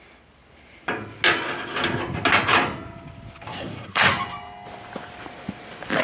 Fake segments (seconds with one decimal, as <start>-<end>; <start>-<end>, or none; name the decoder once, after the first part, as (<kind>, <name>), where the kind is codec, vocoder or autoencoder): 3.5-4.1 (codec, SNAC)